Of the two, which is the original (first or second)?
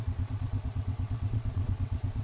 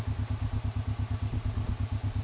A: second